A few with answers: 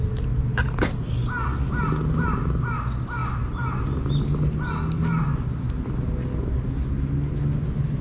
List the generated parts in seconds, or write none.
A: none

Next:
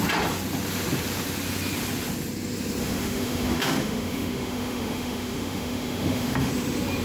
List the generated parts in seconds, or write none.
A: 2.8-6.5 (autoencoder, DAC-VAE)

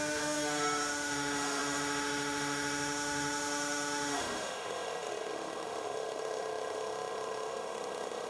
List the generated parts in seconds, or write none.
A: 0.0-8.3 (autoencoder, DAC-VAE)

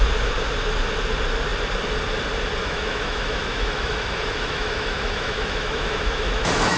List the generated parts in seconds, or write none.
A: 2.6-6.8 (autoencoder, DAC-VAE)